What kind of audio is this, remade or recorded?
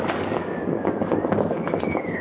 remade